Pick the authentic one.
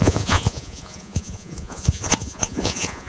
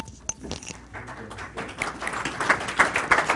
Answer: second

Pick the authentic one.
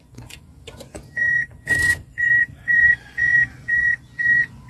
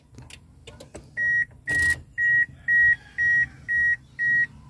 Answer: second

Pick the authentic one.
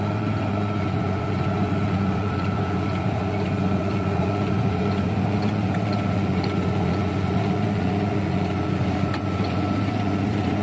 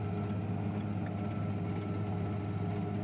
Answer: second